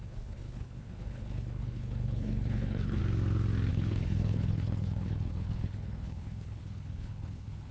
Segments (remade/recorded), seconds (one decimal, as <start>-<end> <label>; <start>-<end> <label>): 0.0-3.0 remade; 3.0-3.7 recorded; 3.7-7.7 remade